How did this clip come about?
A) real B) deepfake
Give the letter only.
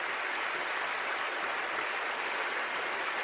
A